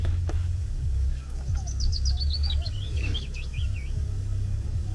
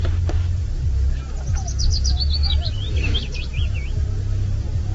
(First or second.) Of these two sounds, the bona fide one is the second